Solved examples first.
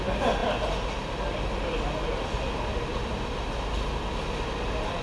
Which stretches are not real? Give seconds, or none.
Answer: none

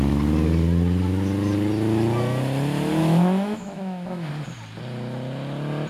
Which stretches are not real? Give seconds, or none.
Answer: 3.0-4.3 (autoencoder, DAC-VAE)

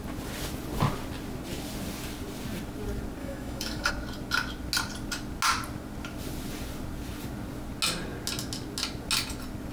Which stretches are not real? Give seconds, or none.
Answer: 3.2-3.9 (autoencoder, DAC-VAE)